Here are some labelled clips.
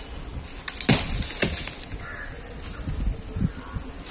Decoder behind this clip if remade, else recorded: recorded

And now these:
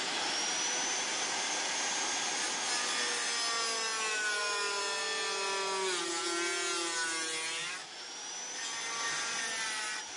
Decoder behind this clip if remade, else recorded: recorded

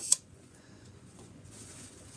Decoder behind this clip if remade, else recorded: remade, vocoder, Vocos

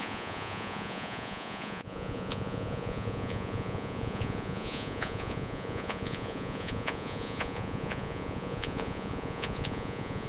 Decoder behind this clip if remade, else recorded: remade, vocoder, Vocos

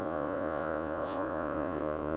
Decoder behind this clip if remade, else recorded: remade, vocoder, Vocos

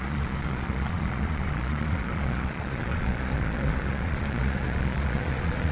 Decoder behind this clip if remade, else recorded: remade, vocoder, Vocos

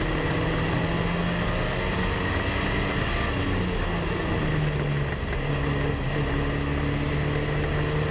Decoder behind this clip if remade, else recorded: recorded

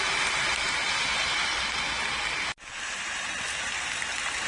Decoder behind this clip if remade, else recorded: recorded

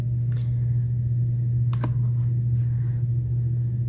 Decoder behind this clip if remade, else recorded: recorded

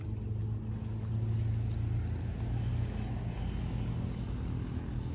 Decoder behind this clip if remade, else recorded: recorded